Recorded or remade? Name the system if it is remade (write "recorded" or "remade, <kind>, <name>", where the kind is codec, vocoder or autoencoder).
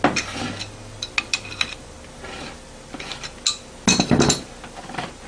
recorded